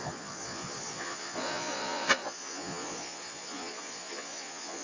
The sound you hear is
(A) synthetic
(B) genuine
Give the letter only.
A